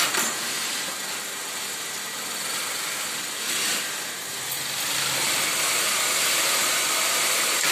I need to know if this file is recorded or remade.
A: recorded